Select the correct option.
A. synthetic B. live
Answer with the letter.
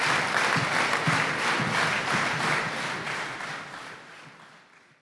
B